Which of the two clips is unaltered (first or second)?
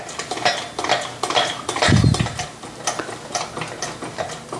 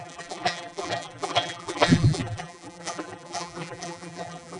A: first